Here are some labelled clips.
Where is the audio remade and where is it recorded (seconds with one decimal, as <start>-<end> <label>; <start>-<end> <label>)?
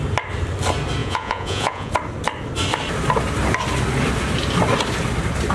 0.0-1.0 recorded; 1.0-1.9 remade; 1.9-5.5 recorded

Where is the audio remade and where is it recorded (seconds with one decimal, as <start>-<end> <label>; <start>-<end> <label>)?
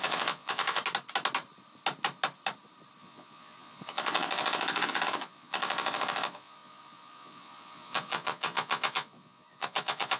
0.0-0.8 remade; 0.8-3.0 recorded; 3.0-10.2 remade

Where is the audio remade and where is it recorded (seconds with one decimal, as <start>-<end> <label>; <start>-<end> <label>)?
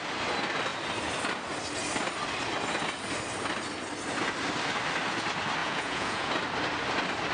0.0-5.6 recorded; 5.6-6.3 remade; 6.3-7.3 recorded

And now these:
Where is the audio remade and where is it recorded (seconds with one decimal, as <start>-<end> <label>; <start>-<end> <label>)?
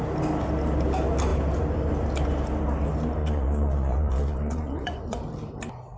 0.0-3.2 recorded; 3.2-5.2 remade; 5.2-6.0 recorded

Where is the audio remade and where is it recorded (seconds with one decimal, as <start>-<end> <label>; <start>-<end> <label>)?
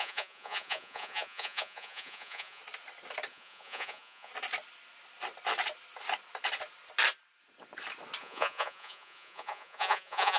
0.0-2.6 remade; 2.6-3.3 recorded; 3.3-4.3 remade; 4.3-8.2 recorded; 8.2-10.4 remade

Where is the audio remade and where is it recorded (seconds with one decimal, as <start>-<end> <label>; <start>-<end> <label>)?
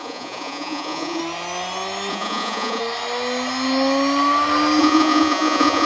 0.0-1.2 remade; 1.2-2.1 recorded; 2.1-2.8 remade; 2.8-4.8 recorded; 4.8-5.9 remade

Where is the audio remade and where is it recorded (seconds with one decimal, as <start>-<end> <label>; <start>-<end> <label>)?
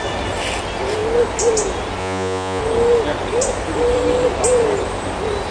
0.0-2.0 recorded; 2.0-2.6 remade; 2.6-5.5 recorded